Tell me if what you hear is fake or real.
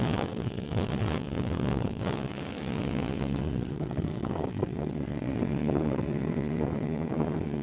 fake